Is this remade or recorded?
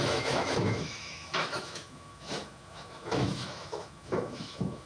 remade